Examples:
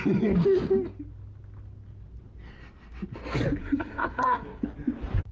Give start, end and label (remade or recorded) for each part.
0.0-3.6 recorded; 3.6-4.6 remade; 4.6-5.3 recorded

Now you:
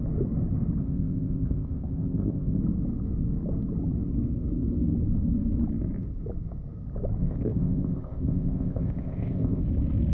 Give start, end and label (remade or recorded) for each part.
0.0-0.8 recorded; 0.8-2.6 remade; 2.6-7.2 recorded; 7.2-9.6 remade; 9.6-10.1 recorded